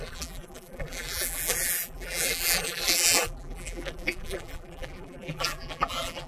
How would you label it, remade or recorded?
remade